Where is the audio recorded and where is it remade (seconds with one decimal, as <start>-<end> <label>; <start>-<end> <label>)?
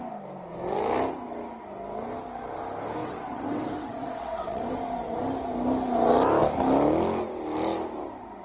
0.0-3.0 recorded; 3.0-4.6 remade; 4.6-8.4 recorded